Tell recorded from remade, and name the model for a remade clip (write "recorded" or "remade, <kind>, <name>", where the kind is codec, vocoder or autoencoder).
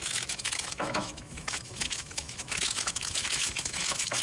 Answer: remade, autoencoder, DAC-VAE